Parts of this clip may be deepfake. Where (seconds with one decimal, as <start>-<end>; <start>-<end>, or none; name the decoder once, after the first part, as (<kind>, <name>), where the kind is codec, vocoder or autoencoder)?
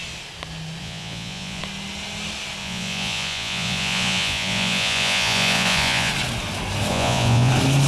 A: 0.8-1.6 (vocoder, Vocos); 2.6-6.1; 6.9-7.5